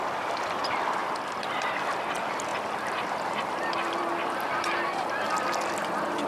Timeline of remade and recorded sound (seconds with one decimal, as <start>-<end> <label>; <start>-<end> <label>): 0.0-1.0 recorded; 1.0-1.7 remade; 1.7-2.5 recorded; 2.5-4.9 remade; 4.9-6.3 recorded